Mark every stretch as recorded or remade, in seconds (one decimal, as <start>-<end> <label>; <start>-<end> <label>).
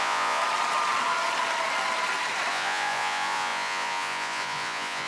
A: 0.0-0.4 remade; 0.4-2.5 recorded; 2.5-5.1 remade